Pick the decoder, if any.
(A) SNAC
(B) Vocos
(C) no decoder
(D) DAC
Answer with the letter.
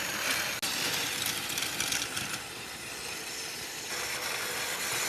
C